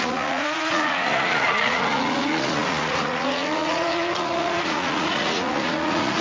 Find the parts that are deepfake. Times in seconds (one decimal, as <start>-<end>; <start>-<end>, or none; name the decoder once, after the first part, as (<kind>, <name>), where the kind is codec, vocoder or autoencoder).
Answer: 0.0-6.2 (vocoder, Vocos)